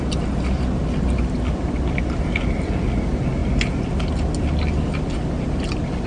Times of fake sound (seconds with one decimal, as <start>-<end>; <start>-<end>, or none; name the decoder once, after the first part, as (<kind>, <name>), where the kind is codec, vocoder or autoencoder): none